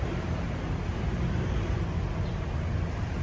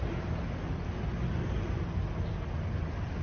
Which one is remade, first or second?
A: first